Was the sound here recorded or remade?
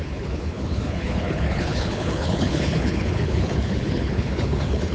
remade